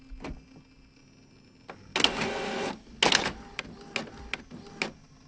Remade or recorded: recorded